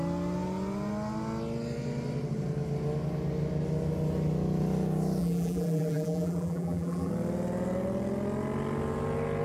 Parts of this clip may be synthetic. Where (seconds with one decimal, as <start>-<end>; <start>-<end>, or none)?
5.2-7.1